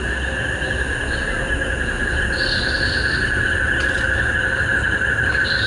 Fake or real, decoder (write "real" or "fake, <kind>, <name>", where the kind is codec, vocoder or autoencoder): real